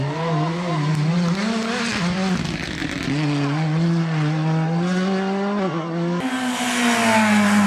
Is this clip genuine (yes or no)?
yes